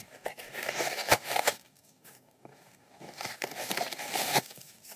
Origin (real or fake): fake